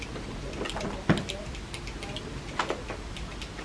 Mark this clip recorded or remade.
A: recorded